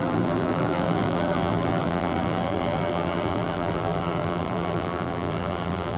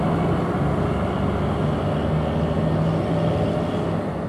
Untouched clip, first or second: second